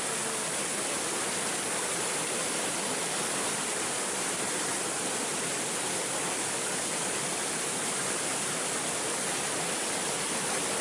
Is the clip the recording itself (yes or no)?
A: yes